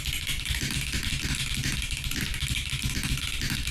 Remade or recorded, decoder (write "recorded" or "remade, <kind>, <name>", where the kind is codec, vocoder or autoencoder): recorded